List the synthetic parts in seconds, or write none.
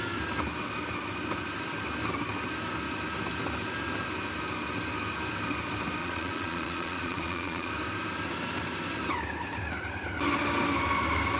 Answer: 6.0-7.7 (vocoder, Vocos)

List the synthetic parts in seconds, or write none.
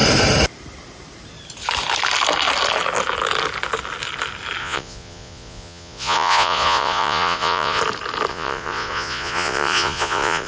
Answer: 4.6-7.8 (vocoder, Vocos); 8.3-10.5